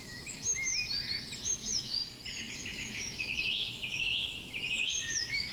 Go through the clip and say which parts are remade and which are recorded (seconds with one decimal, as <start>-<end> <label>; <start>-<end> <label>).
0.0-0.7 remade; 0.7-1.4 recorded; 1.4-2.0 remade; 2.0-2.5 recorded; 2.5-5.5 remade